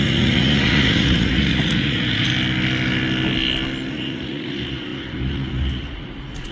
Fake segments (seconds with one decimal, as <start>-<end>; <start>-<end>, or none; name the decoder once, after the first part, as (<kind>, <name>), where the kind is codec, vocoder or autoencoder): 0.0-2.3 (vocoder, Vocos); 3.9-6.5